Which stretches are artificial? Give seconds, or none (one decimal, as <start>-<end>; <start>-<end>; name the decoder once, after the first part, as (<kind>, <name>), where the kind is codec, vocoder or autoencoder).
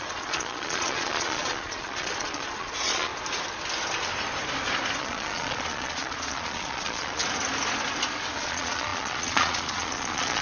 0.0-3.1 (vocoder, Vocos); 5.0-7.2; 8.4-10.4